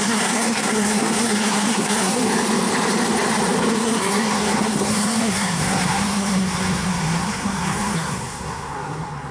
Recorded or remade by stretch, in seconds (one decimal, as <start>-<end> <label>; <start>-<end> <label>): 0.0-2.2 remade; 2.2-3.7 recorded; 3.7-9.3 remade